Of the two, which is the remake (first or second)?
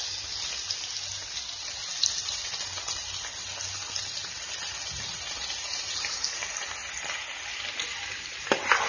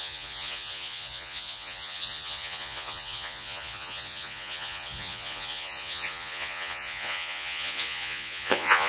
second